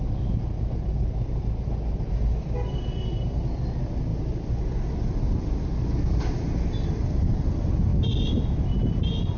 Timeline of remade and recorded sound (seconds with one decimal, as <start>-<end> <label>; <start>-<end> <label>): 0.0-9.4 recorded